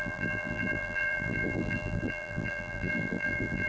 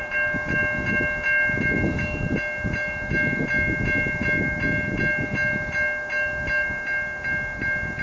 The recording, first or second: second